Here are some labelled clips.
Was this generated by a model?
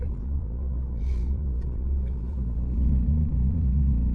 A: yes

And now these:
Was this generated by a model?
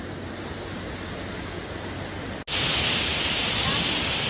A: no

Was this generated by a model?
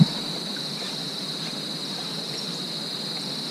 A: no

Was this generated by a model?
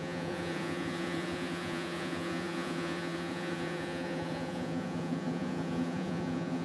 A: yes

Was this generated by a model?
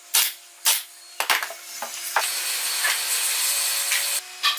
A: no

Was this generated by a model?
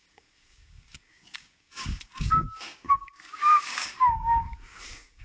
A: yes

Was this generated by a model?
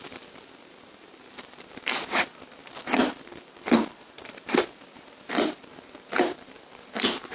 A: yes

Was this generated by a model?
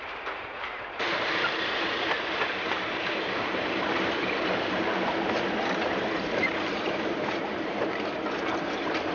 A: yes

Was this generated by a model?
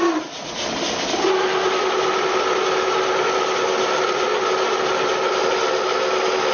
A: no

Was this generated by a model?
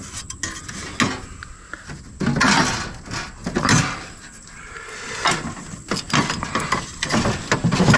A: no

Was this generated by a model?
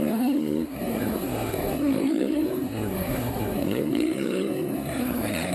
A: yes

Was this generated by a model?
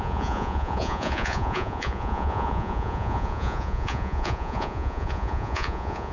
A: yes